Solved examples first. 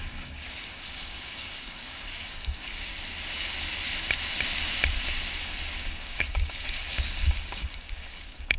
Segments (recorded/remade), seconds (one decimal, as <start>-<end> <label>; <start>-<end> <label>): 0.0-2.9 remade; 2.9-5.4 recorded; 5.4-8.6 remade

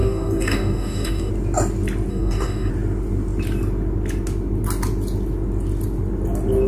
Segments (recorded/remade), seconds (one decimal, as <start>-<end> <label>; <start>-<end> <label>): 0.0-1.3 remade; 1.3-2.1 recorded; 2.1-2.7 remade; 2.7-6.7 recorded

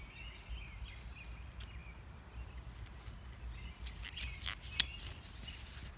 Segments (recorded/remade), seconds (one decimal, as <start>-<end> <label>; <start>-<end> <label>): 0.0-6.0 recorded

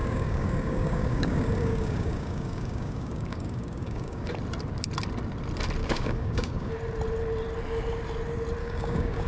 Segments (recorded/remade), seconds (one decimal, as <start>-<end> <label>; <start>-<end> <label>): 0.0-4.3 remade; 4.3-5.8 recorded; 5.8-6.7 remade; 6.7-8.6 recorded; 8.6-9.3 remade